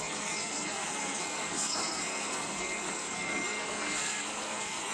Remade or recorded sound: remade